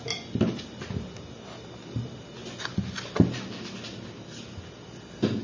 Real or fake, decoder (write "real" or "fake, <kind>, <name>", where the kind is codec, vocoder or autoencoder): real